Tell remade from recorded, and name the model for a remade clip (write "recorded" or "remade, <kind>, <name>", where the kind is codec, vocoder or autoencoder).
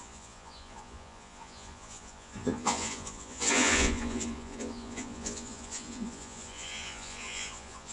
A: remade, vocoder, Vocos